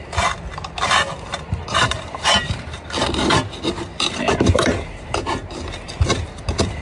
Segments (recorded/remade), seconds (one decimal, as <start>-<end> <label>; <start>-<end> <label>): 0.0-1.3 recorded; 1.3-2.8 remade; 2.8-3.9 recorded; 3.9-6.0 remade; 6.0-6.8 recorded